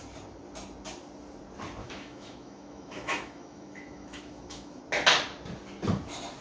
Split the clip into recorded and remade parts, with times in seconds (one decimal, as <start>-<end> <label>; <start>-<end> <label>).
0.0-1.8 recorded; 1.8-4.8 remade; 4.8-6.4 recorded